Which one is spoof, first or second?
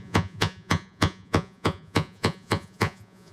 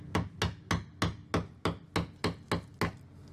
first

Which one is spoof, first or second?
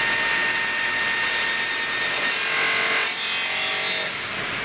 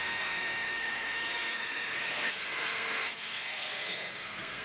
second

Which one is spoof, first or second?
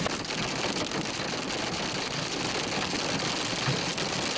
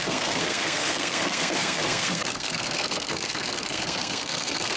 second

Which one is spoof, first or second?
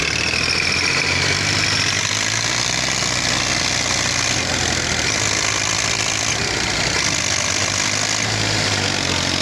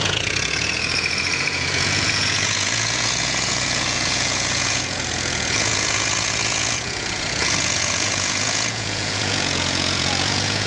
second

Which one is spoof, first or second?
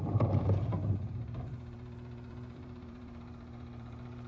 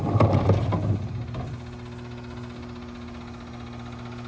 first